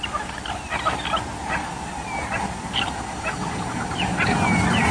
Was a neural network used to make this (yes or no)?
no